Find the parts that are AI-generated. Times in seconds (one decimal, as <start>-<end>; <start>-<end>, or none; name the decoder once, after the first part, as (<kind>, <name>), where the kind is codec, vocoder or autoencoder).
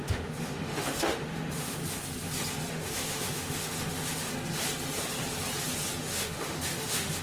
0.0-1.8 (autoencoder, DAC-VAE); 2.7-4.3; 6.0-7.2